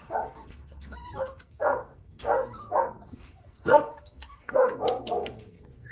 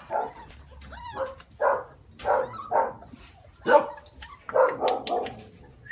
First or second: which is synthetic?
first